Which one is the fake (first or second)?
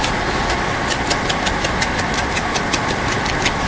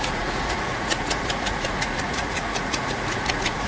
second